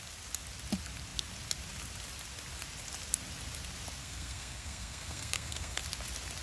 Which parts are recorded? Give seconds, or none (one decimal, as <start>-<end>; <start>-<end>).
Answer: 0.0-4.0; 5.8-6.4